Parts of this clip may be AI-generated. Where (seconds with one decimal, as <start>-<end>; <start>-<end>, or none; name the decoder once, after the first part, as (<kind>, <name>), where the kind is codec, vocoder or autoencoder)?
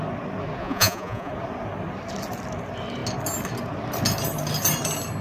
0.6-1.3 (vocoder, Vocos)